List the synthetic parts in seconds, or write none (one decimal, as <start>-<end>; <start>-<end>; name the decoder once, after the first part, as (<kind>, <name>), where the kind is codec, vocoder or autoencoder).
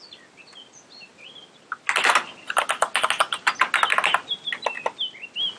none